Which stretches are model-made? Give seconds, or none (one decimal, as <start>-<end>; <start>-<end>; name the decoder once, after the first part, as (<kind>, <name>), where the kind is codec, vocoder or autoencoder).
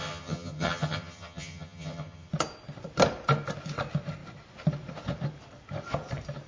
0.0-2.3 (vocoder, HiFi-GAN)